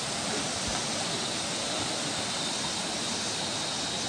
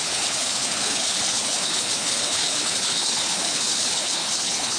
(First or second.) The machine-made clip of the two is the second